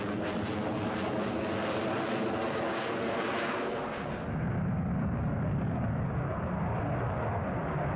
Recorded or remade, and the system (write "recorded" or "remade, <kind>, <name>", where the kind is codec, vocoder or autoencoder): recorded